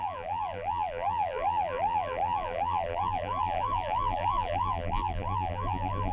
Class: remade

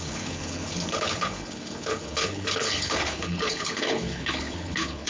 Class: remade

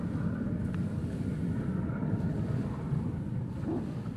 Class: recorded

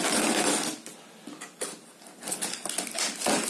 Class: recorded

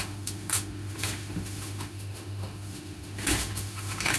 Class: remade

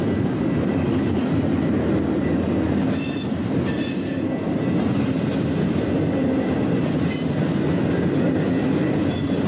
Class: recorded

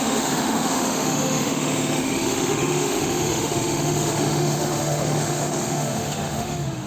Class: remade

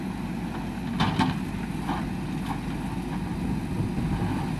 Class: recorded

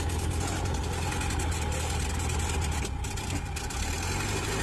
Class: recorded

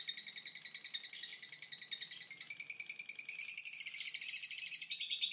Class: recorded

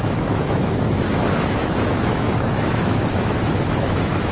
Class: remade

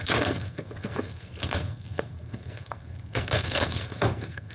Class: remade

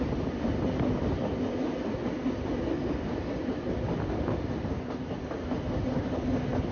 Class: recorded